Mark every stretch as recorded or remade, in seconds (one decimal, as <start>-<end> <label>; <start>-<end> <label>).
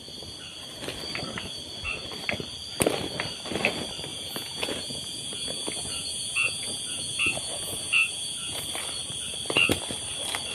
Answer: 0.0-4.1 recorded; 4.1-8.6 remade; 8.6-10.5 recorded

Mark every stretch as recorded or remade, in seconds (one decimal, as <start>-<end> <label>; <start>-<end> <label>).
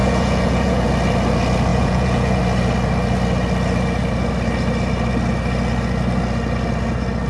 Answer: 0.0-0.9 remade; 0.9-1.7 recorded; 1.7-2.4 remade; 2.4-7.3 recorded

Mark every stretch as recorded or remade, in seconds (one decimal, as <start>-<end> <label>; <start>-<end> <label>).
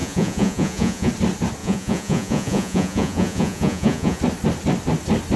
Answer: 0.0-1.1 remade; 1.1-1.6 recorded; 1.6-4.2 remade; 4.2-5.4 recorded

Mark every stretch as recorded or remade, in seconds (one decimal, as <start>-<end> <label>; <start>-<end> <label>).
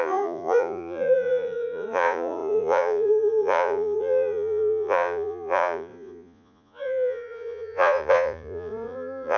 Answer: 0.0-9.4 remade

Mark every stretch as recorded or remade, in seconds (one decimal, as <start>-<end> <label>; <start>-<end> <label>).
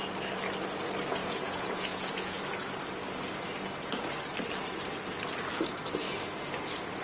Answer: 0.0-1.2 recorded; 1.2-2.4 remade; 2.4-7.0 recorded